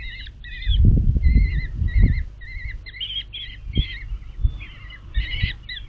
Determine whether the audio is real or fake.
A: real